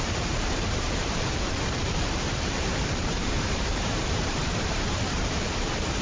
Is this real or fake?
fake